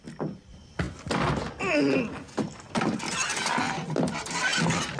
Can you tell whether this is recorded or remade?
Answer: recorded